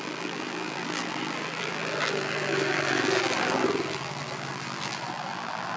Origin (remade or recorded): remade